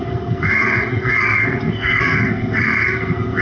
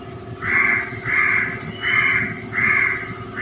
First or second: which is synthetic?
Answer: first